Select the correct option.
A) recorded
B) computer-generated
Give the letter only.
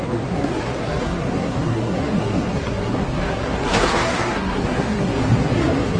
B